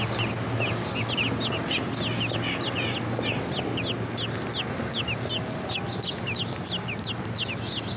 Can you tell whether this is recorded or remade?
recorded